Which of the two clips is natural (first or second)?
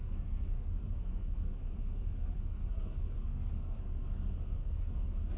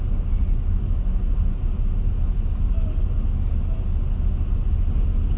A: second